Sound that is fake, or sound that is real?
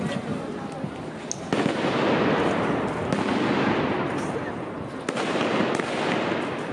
real